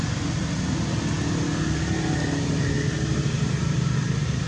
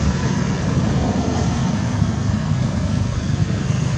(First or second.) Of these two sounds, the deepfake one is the second